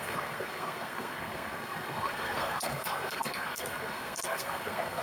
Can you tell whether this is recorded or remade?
remade